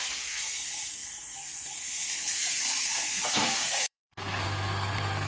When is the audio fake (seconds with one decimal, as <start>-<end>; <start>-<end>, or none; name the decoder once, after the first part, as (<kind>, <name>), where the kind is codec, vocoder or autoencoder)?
0.0-5.3 (codec, SNAC)